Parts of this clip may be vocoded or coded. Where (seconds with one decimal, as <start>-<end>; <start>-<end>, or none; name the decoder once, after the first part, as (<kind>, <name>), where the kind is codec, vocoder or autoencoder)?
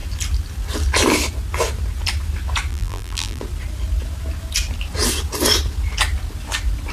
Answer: 2.7-3.4 (vocoder, BigVGAN v2)